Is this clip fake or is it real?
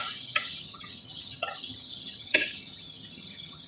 fake